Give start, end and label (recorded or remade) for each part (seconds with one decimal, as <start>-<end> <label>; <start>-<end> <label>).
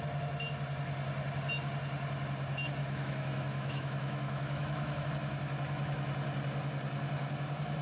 0.0-2.8 recorded; 2.8-5.1 remade; 5.1-7.8 recorded